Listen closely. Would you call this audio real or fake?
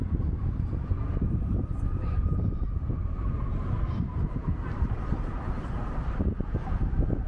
fake